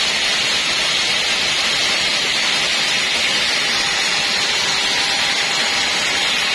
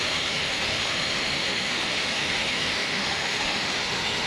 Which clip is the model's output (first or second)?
second